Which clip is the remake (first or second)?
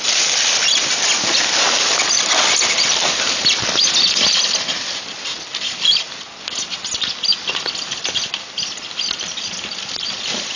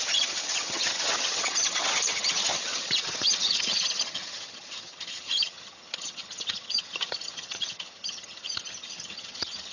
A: second